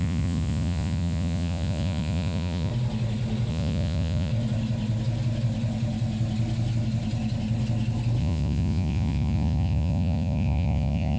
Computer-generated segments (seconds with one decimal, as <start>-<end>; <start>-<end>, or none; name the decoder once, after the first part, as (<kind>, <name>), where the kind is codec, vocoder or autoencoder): 0.0-2.7 (vocoder, Vocos); 3.5-4.3; 8.2-11.2